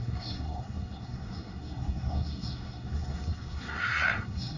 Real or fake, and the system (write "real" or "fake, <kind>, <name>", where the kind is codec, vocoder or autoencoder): fake, codec, SNAC